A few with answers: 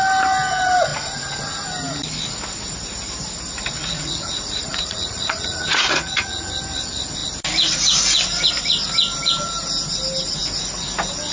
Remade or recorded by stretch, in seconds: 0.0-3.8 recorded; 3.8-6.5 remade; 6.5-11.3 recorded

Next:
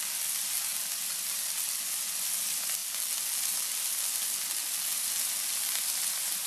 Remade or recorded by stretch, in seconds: 0.0-6.5 recorded

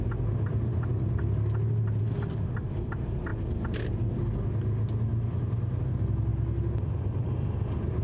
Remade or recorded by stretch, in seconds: 0.0-8.0 recorded

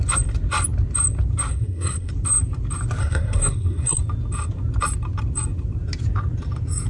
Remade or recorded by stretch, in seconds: 0.0-1.5 recorded; 1.5-2.1 remade; 2.1-3.0 recorded; 3.0-4.0 remade; 4.0-6.9 recorded

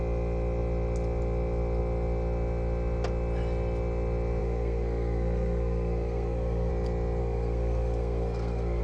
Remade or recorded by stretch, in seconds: 0.0-4.4 recorded; 4.4-6.7 remade; 6.7-7.2 recorded; 7.2-8.8 remade

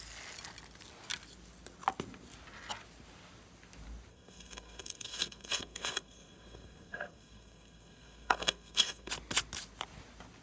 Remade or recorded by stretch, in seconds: 0.0-4.1 recorded; 4.1-9.1 remade; 9.1-10.4 recorded

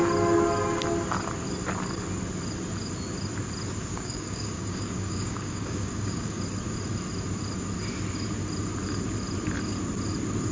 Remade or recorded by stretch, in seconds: 0.0-3.9 recorded; 3.9-6.4 remade; 6.4-10.5 recorded

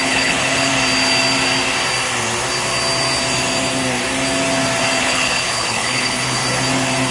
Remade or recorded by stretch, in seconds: 0.0-0.7 remade; 0.7-5.0 recorded; 5.0-6.4 remade; 6.4-7.1 recorded